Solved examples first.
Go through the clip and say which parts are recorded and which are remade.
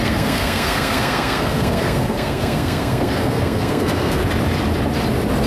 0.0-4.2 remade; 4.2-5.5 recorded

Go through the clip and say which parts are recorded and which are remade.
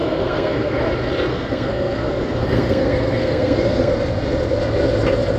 0.0-0.8 remade; 0.8-1.3 recorded; 1.3-3.9 remade; 3.9-5.4 recorded